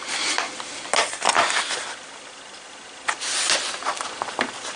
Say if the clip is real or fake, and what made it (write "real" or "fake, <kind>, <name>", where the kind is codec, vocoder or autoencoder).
real